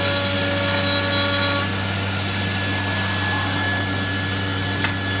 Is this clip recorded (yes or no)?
yes